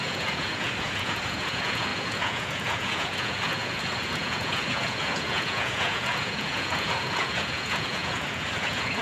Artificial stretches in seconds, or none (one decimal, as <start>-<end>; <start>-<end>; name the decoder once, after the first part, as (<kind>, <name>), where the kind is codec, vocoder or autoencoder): 0.0-9.0 (vocoder, Vocos)